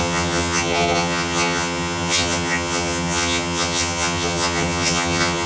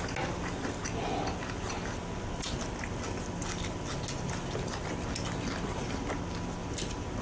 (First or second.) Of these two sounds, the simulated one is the first